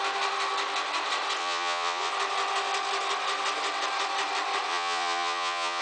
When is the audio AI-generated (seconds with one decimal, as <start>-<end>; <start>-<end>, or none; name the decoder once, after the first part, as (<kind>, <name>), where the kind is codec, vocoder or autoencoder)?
1.4-2.1 (vocoder, Vocos); 4.7-5.8